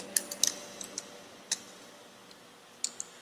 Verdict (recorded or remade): recorded